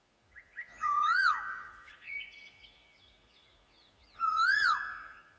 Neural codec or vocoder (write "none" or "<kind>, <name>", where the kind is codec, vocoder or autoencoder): vocoder, Vocos